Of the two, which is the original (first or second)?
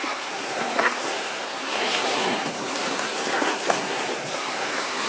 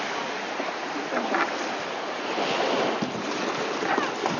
second